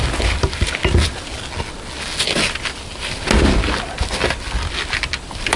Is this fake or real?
real